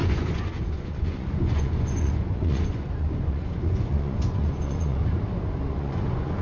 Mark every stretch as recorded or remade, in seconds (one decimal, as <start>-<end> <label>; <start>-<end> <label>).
0.0-5.0 remade; 5.0-5.6 recorded; 5.6-6.4 remade